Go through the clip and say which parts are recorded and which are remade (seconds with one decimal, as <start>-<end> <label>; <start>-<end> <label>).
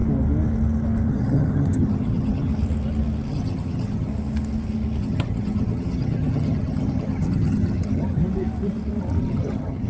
0.0-1.1 recorded; 1.1-2.5 remade; 2.5-3.3 recorded; 3.3-4.1 remade; 4.1-5.0 recorded; 5.0-8.2 remade; 8.2-9.2 recorded; 9.2-9.9 remade